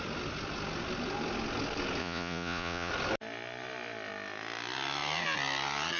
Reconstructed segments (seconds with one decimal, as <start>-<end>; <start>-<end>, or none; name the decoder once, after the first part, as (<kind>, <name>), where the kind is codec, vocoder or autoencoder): 2.0-2.9 (vocoder, Vocos)